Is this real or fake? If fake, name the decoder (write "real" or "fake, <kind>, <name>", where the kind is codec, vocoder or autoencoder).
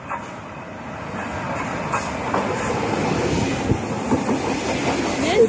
real